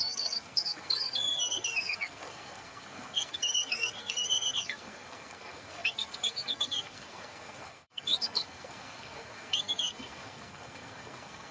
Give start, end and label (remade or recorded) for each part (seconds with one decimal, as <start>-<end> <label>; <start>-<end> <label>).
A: 0.0-11.5 remade